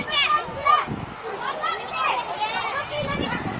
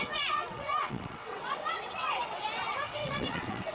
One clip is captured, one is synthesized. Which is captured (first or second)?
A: first